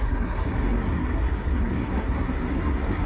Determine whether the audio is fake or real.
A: fake